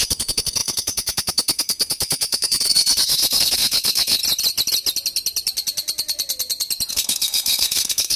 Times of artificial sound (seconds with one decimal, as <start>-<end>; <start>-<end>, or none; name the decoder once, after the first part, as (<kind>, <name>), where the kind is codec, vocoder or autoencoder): 0.0-4.2 (codec, SNAC); 6.9-8.2